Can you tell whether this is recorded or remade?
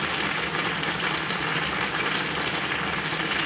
recorded